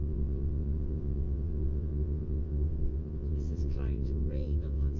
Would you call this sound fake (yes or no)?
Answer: yes